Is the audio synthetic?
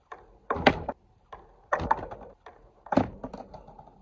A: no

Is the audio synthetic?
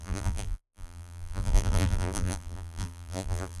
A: yes